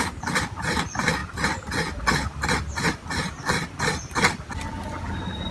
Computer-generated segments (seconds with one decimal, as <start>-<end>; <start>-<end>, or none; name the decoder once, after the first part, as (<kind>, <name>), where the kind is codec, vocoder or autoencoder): none